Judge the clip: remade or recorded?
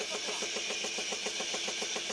recorded